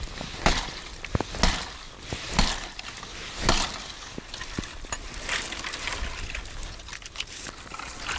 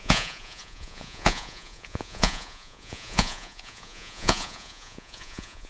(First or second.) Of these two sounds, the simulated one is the second